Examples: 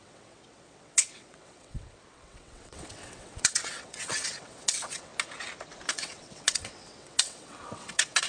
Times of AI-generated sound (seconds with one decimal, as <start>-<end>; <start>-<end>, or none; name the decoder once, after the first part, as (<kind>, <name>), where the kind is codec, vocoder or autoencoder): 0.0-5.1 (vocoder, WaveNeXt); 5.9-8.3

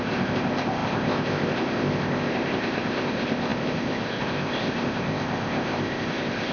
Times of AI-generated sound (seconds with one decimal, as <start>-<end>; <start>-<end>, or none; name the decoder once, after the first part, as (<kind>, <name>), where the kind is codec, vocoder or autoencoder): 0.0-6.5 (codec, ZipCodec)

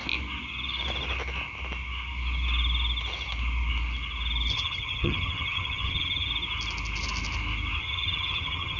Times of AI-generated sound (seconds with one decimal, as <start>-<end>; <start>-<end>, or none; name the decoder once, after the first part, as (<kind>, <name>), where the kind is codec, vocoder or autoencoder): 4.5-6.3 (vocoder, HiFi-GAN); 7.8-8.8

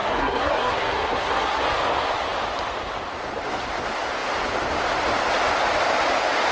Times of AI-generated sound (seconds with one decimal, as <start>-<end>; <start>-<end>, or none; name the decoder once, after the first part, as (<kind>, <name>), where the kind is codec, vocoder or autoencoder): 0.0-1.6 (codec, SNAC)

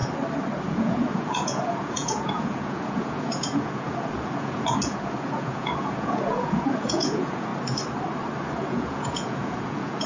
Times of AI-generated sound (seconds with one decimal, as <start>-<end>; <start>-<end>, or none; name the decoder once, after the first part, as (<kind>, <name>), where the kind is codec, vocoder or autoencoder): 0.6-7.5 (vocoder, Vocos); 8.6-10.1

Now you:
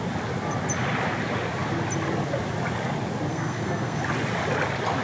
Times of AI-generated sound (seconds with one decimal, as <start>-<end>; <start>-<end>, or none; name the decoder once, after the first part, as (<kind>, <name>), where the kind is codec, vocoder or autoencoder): 3.3-4.0 (codec, SNAC)

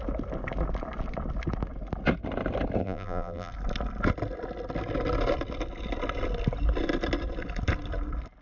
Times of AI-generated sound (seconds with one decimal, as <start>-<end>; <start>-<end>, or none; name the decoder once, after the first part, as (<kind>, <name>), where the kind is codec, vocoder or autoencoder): 2.8-3.5 (vocoder, BigVGAN v2)

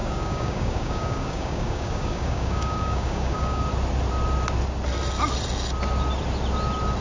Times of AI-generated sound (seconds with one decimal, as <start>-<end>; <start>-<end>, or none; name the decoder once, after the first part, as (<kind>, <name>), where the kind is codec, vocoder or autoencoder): 0.0-3.6 (codec, DAC)